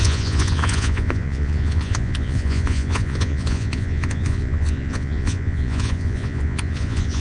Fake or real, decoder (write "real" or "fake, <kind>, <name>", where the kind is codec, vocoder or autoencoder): fake, vocoder, Vocos